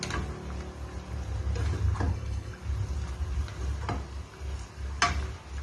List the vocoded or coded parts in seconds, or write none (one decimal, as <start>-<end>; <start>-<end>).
2.1-2.6

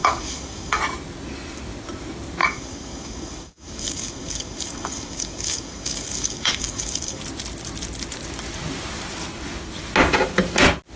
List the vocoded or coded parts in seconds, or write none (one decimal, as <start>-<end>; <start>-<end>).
0.0-0.8; 2.4-7.2

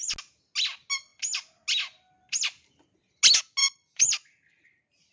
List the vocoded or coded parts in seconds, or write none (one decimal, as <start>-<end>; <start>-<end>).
3.6-5.1

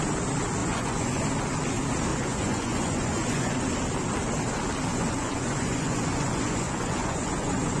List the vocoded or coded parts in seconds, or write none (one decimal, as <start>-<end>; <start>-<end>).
0.6-1.2; 2.1-3.6; 4.9-7.8

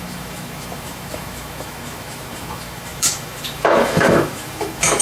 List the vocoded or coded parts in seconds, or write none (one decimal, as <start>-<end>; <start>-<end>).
0.0-5.0

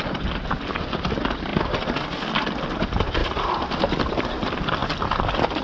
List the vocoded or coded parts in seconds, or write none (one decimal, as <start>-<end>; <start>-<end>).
none